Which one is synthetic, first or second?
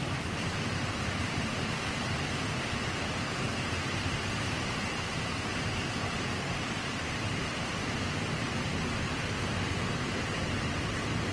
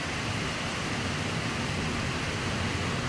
first